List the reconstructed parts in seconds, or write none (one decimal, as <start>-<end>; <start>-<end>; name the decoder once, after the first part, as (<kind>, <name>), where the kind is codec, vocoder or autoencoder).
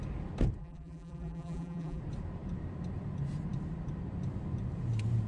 0.6-2.0 (vocoder, BigVGAN v2)